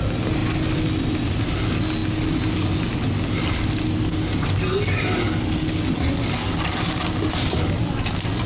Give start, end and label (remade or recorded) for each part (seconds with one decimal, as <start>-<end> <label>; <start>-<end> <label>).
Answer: 0.0-8.5 recorded